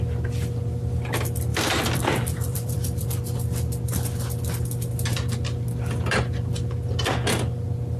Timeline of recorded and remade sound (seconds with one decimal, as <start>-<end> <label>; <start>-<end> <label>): 0.0-1.5 recorded; 1.5-3.1 remade; 3.1-8.0 recorded